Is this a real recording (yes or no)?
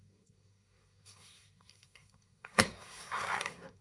no